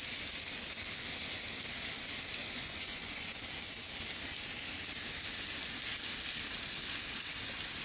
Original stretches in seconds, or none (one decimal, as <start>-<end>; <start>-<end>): 0.0-2.4; 3.4-7.8